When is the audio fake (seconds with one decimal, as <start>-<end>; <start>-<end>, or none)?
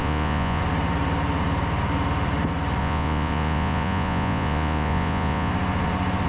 0.0-0.6; 2.8-5.5